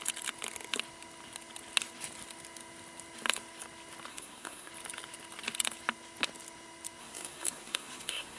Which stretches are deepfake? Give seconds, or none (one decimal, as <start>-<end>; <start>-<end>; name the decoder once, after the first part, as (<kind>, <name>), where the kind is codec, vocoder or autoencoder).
4.1-4.7 (codec, SNAC); 7.0-8.4